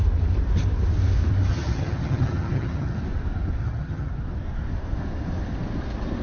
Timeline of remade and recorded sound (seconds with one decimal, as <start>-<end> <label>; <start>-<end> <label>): 0.0-1.5 recorded; 1.5-3.0 remade; 3.0-3.6 recorded; 3.6-4.1 remade; 4.1-6.2 recorded